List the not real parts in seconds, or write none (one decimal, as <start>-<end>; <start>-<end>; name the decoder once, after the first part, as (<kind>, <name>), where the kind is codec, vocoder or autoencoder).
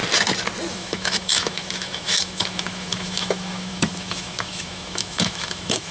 0.7-5.9 (autoencoder, DAC-VAE)